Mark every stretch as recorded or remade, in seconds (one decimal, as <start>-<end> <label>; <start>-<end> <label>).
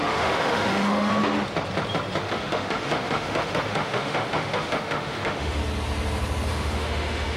0.0-1.1 remade; 1.1-2.2 recorded; 2.2-5.6 remade; 5.6-6.5 recorded; 6.5-7.4 remade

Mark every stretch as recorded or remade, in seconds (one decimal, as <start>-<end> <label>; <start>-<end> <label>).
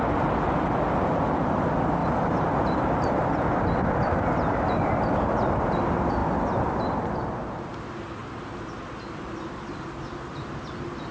0.0-2.0 recorded; 2.0-3.2 remade; 3.2-11.1 recorded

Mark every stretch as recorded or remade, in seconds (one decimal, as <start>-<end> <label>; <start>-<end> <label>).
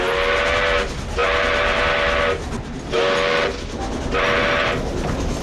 0.0-5.4 recorded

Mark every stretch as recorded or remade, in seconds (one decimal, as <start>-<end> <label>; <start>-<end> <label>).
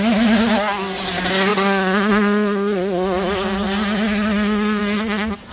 0.0-5.5 recorded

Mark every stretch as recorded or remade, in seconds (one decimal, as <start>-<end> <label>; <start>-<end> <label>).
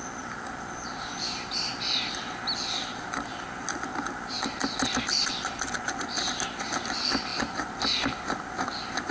0.0-9.1 recorded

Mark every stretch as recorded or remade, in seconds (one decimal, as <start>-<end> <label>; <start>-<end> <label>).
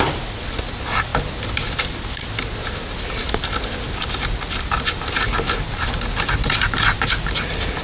0.0-7.8 recorded